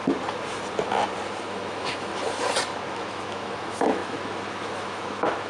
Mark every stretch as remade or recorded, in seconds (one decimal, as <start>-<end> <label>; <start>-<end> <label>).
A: 0.0-1.5 recorded; 1.5-2.1 remade; 2.1-2.9 recorded; 2.9-5.5 remade